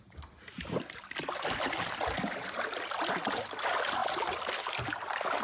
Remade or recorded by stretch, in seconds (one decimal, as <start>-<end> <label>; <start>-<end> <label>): 0.0-5.4 recorded

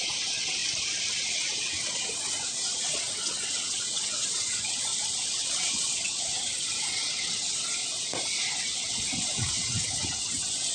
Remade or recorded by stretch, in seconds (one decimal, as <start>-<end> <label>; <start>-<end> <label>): 0.0-0.6 remade; 0.6-1.1 recorded; 1.1-4.9 remade; 4.9-5.4 recorded; 5.4-7.8 remade; 7.8-8.4 recorded; 8.4-10.7 remade